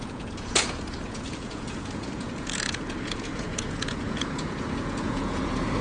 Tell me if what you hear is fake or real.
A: fake